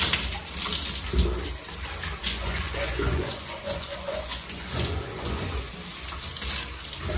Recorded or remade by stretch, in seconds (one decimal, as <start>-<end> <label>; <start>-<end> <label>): 0.0-2.2 recorded; 2.2-5.7 remade; 5.7-7.2 recorded